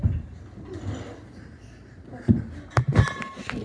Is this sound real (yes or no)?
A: yes